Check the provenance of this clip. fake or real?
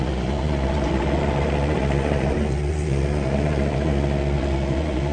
fake